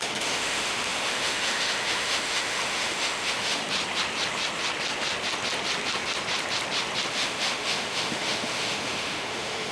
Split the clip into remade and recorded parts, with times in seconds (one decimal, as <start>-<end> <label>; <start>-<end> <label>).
0.0-3.6 remade; 3.6-7.1 recorded; 7.1-9.7 remade